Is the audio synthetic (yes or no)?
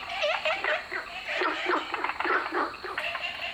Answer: no